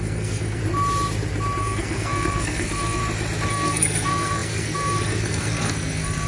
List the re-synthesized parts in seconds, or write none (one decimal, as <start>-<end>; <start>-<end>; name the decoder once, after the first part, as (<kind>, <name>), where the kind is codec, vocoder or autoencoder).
0.0-0.6 (codec, SNAC); 1.6-3.0; 3.5-6.3